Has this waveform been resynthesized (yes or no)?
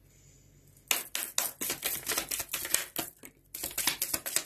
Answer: no